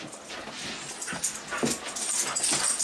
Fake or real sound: real